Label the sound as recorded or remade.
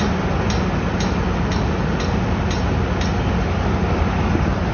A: recorded